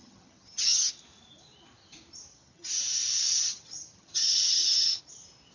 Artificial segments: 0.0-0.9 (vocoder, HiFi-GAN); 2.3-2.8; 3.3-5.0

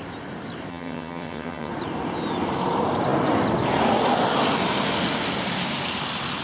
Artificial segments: 0.7-1.7 (vocoder, HiFi-GAN)